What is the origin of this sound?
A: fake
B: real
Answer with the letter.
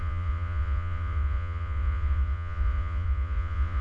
A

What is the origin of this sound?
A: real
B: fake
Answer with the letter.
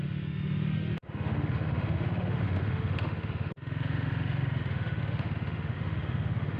B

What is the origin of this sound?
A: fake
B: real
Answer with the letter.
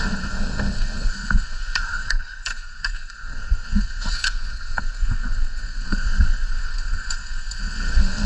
A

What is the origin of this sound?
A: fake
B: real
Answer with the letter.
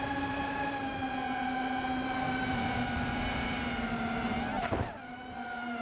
A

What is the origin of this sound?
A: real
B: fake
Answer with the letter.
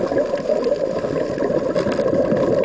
A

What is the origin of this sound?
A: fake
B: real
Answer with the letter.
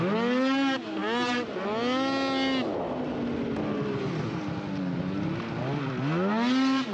B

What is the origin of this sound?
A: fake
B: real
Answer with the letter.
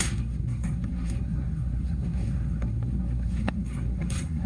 A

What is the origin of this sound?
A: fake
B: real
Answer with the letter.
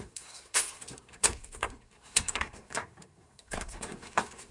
A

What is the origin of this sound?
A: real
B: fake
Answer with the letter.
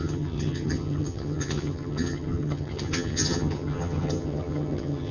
B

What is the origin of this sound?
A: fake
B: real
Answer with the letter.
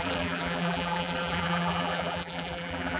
A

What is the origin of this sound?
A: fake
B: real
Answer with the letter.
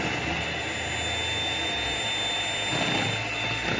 B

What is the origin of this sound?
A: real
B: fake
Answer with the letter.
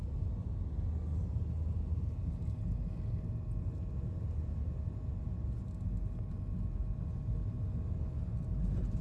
A